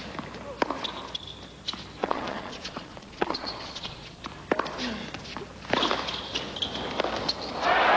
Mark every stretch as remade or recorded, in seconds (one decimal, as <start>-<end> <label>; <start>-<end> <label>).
0.0-2.0 recorded; 2.0-4.2 remade; 4.2-8.0 recorded